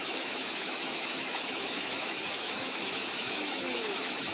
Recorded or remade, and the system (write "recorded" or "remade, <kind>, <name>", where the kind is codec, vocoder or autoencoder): remade, autoencoder, DAC-VAE